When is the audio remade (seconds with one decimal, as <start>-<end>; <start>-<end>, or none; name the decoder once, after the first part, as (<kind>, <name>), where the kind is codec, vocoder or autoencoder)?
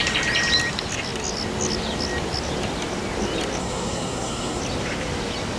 3.6-4.6 (codec, SNAC)